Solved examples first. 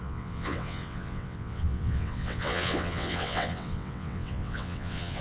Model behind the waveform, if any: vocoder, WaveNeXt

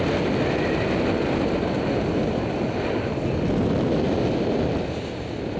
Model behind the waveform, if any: none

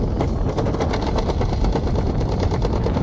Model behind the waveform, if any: none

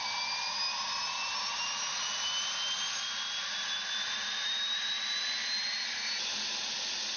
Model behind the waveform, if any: none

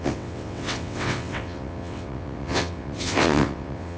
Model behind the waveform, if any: vocoder, WaveNeXt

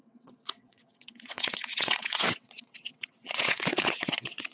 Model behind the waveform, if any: vocoder, WaveNeXt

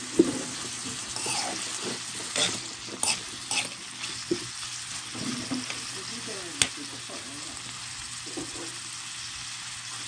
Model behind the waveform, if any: none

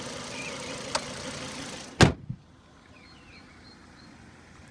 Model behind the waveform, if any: none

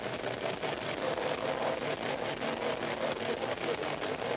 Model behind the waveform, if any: none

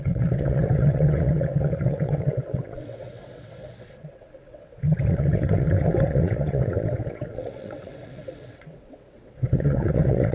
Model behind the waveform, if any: vocoder, WaveNeXt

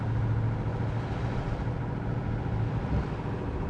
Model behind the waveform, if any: none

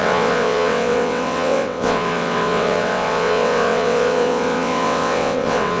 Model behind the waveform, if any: vocoder, WaveNeXt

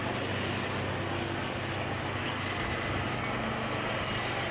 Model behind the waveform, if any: none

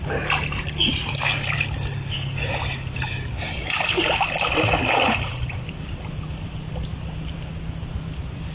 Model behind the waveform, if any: none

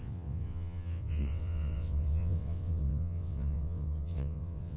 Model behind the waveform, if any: vocoder, WaveNeXt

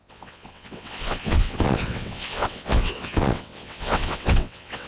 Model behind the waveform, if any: vocoder, WaveNeXt